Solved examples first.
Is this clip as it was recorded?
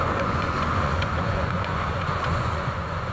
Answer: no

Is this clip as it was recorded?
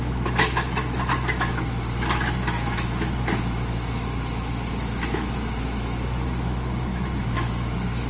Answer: no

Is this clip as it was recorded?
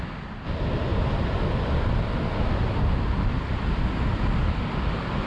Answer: yes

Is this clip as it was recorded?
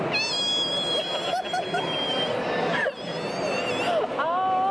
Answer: yes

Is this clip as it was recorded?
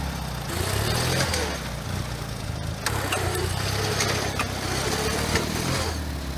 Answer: yes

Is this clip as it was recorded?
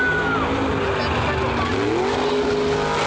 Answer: yes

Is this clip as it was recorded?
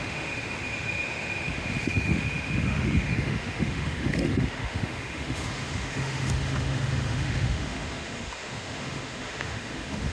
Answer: no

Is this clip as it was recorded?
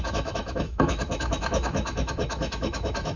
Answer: no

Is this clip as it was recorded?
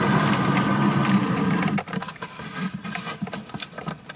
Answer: yes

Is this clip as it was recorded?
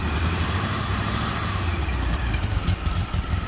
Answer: no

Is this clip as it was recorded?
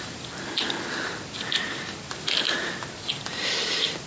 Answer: yes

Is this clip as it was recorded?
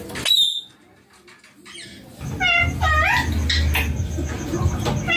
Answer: yes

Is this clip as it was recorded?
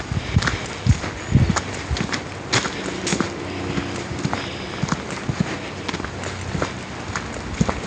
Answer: yes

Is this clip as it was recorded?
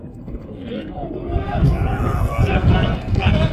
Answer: no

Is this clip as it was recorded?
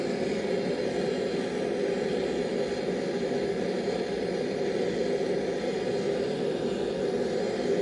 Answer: yes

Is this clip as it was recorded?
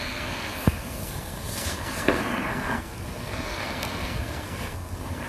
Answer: no